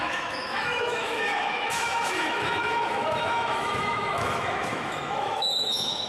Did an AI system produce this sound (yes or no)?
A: yes